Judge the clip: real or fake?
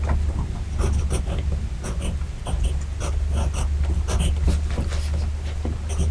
real